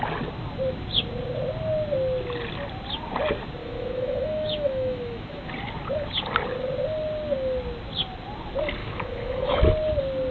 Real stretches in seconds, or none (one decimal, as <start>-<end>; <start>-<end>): 0.0-3.6; 5.5-8.8; 9.6-10.3